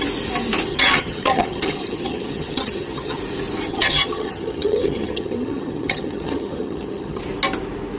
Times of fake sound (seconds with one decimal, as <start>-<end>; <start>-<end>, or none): 0.7-3.2; 3.7-7.2